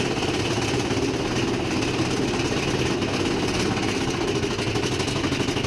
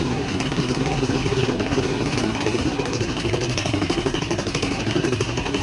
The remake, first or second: second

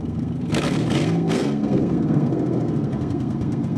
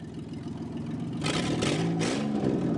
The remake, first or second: first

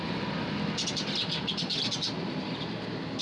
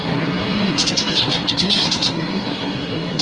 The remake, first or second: second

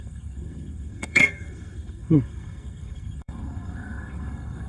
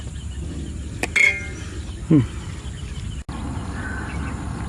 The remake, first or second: first